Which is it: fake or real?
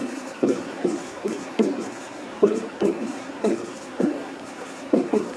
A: fake